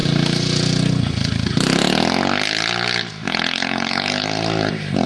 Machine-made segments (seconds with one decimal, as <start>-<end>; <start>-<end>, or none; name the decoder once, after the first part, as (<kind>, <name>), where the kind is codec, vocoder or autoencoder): 3.1-5.1 (vocoder, BigVGAN v2)

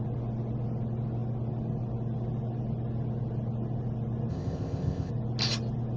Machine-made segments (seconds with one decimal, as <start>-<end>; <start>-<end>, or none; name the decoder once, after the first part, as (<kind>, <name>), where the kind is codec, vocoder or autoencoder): 4.3-5.1 (codec, ZipCodec)

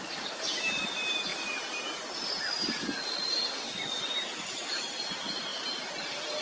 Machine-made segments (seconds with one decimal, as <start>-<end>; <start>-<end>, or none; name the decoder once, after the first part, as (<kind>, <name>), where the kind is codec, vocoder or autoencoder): 1.3-2.2 (vocoder, BigVGAN v2)

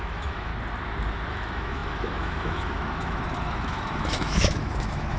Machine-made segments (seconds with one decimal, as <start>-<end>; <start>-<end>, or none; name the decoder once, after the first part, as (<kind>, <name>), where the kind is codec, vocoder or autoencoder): 0.0-0.5 (autoencoder, DAC-VAE); 1.3-5.2

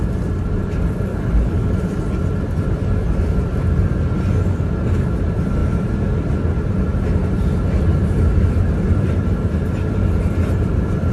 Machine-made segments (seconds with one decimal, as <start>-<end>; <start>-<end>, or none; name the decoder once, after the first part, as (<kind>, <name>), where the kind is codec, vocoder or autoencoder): 1.1-1.7 (codec, HILCodec)

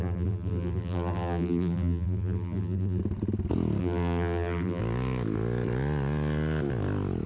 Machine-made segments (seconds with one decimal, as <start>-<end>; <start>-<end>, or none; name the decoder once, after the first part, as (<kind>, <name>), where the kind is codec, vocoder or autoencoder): 0.0-3.0 (vocoder, BigVGAN v2); 3.8-4.8